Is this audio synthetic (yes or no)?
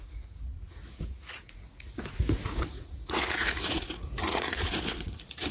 yes